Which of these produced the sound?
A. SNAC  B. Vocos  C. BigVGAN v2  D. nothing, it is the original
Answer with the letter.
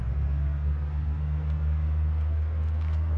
A